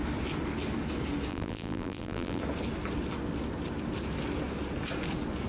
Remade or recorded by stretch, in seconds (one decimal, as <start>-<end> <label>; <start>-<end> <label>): 0.0-1.3 recorded; 1.3-2.4 remade; 2.4-5.5 recorded